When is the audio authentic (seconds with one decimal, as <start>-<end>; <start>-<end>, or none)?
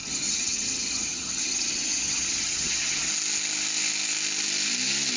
3.1-5.2